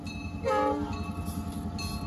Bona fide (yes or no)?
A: yes